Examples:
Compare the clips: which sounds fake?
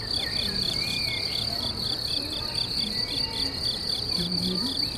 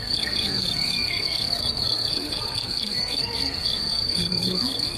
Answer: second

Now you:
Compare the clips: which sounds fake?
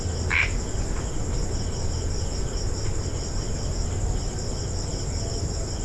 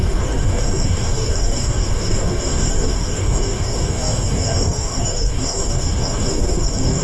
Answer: second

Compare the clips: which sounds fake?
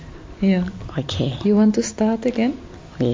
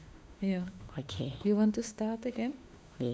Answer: second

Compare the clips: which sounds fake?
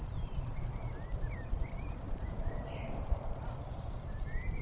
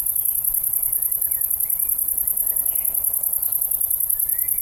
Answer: first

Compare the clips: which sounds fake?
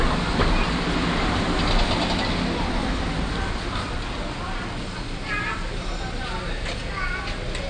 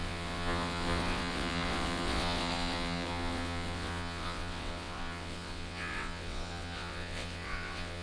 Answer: second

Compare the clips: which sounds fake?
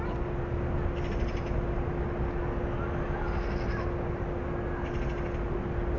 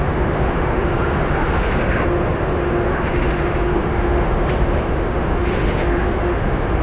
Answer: second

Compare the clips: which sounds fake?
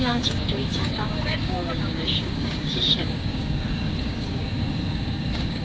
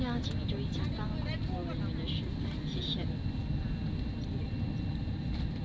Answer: first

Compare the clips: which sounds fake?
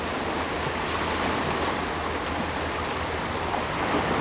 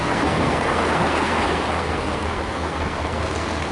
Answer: second